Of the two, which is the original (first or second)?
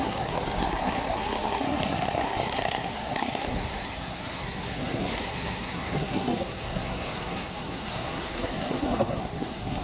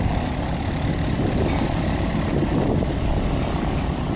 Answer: second